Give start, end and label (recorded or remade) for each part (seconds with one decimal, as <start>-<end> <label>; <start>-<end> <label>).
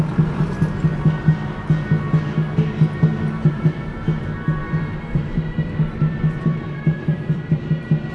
0.0-4.6 recorded; 4.6-7.6 remade; 7.6-8.1 recorded